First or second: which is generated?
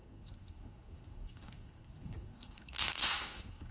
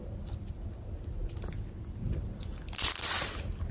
first